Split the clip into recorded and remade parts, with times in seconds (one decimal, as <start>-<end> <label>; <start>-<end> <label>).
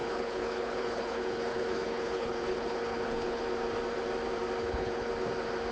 0.0-3.4 remade; 3.4-4.6 recorded; 4.6-5.1 remade; 5.1-5.7 recorded